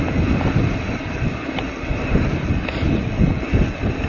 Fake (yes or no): no